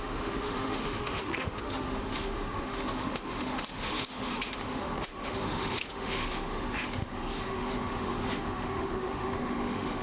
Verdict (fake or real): fake